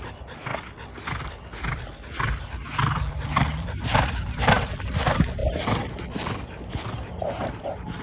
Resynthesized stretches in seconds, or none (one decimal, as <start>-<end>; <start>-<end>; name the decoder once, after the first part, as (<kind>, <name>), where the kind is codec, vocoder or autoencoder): none